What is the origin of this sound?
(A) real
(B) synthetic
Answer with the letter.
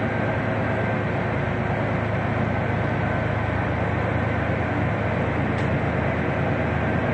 A